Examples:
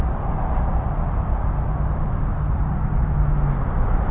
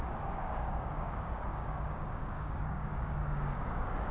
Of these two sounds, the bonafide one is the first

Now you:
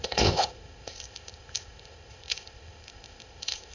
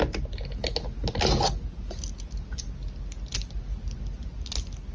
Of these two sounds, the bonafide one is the second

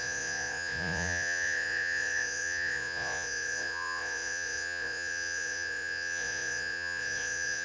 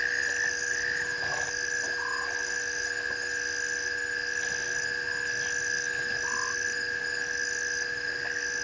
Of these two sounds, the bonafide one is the second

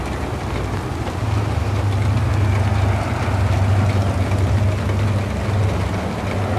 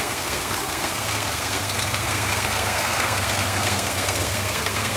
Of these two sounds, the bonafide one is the first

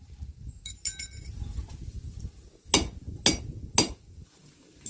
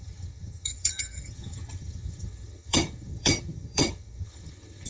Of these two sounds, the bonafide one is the first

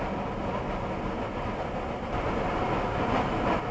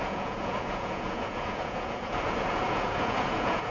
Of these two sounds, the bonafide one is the first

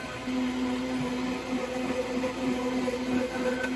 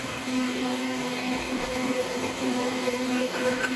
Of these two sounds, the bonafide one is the first